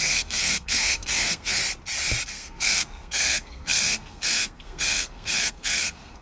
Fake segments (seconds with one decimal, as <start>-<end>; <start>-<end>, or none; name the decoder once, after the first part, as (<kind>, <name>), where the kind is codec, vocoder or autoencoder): 0.0-1.6 (codec, SNAC); 2.3-6.2